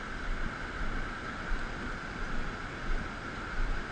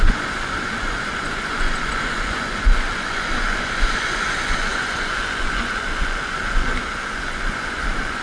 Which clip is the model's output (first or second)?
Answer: second